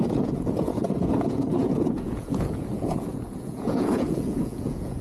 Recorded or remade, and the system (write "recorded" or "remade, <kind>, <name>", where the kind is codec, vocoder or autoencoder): remade, vocoder, Vocos